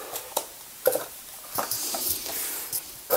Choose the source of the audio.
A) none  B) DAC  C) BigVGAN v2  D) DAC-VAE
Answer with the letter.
C